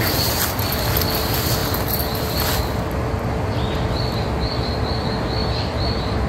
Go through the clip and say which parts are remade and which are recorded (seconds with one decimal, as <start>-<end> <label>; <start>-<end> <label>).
0.0-5.4 recorded; 5.4-6.3 remade